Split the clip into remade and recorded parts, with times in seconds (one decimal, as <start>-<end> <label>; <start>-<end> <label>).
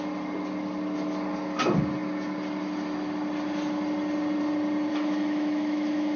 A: 0.0-4.9 recorded; 4.9-6.2 remade